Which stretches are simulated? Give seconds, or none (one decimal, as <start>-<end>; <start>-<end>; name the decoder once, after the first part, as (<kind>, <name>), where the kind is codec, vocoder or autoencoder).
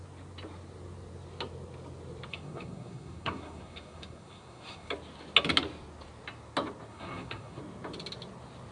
2.3-4.9 (codec, SNAC); 6.9-7.6